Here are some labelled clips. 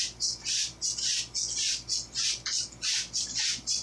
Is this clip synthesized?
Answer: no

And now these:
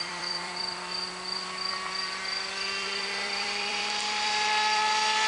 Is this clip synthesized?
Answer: yes